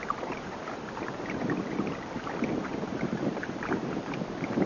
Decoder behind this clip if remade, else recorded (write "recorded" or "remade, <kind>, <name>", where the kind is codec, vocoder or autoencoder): remade, vocoder, BigVGAN v2